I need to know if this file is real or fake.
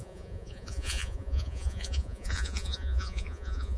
fake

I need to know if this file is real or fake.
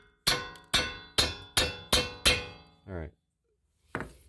real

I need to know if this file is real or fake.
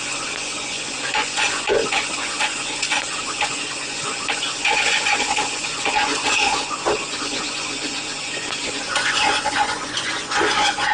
fake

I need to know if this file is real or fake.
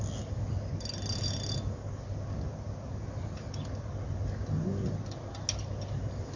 real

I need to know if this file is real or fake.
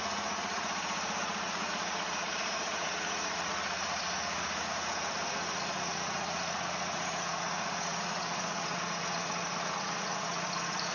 fake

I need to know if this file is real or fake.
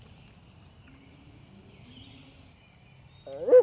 real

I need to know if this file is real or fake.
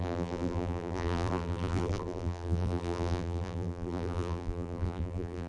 fake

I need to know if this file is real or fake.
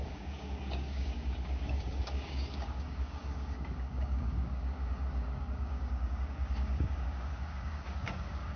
fake